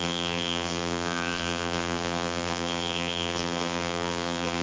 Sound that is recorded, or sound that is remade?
remade